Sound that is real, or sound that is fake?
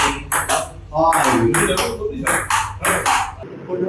real